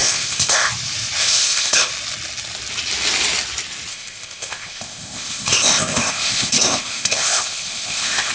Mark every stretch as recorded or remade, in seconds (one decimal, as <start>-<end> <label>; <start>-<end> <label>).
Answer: 0.0-0.7 remade; 0.7-1.2 recorded; 1.2-1.9 remade; 1.9-3.9 recorded; 3.9-8.3 remade

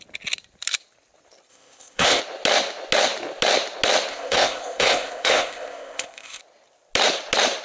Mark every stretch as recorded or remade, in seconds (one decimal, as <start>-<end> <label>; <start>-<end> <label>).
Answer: 0.0-1.5 recorded; 1.5-2.2 remade; 2.2-4.1 recorded; 4.1-6.4 remade; 6.4-7.6 recorded